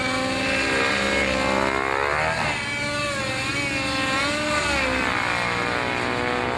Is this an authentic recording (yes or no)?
yes